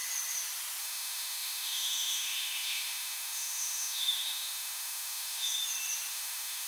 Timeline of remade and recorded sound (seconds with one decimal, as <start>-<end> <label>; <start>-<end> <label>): 0.0-0.8 recorded; 0.8-5.6 remade; 5.6-6.1 recorded; 6.1-6.7 remade